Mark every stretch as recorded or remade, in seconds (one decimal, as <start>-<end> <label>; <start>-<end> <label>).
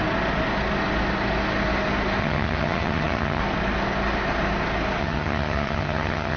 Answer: 0.0-2.2 recorded; 2.2-3.4 remade; 3.4-5.0 recorded; 5.0-6.4 remade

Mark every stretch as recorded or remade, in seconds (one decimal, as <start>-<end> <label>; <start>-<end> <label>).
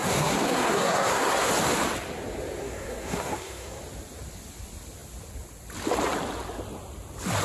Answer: 0.0-1.5 remade; 1.5-2.6 recorded; 2.6-3.8 remade; 3.8-7.4 recorded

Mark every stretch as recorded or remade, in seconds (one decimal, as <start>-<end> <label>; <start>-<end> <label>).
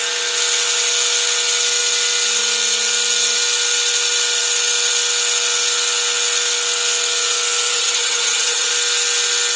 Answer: 0.0-7.7 recorded; 7.7-8.7 remade; 8.7-9.6 recorded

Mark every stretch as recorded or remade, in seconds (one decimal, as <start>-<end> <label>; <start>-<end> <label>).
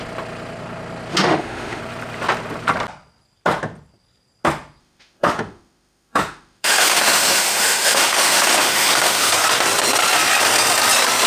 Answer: 0.0-1.1 recorded; 1.1-1.8 remade; 1.8-4.8 recorded; 4.8-9.3 remade; 9.3-11.3 recorded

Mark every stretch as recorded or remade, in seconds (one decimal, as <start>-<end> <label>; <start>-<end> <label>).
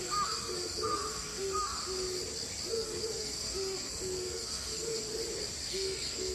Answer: 0.0-1.8 remade; 1.8-2.7 recorded; 2.7-5.1 remade; 5.1-5.7 recorded; 5.7-6.3 remade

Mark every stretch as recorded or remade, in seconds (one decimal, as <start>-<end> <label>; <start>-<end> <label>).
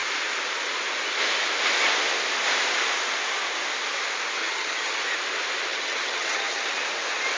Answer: 0.0-4.4 recorded; 4.4-5.0 remade; 5.0-5.7 recorded; 5.7-6.8 remade; 6.8-7.4 recorded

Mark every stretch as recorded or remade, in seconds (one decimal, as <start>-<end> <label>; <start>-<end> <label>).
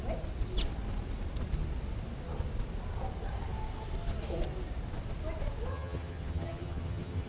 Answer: 0.0-5.7 recorded; 5.7-7.3 remade